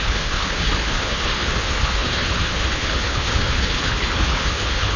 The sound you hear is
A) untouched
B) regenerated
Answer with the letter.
B